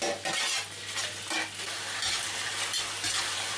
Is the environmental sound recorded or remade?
recorded